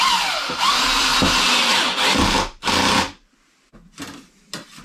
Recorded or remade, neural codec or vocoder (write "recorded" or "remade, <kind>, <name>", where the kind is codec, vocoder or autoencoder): recorded